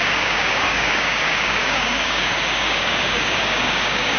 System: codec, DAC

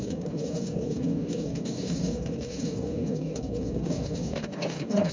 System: codec, DAC